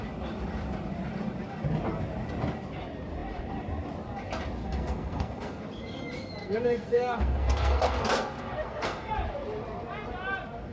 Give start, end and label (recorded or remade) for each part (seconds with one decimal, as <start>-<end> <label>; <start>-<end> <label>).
0.0-4.6 recorded; 4.6-5.6 remade; 5.6-6.4 recorded; 6.4-9.1 remade; 9.1-10.7 recorded